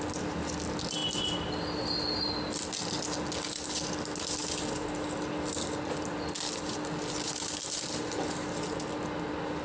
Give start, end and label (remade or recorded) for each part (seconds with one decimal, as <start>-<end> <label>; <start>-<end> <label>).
0.0-9.6 recorded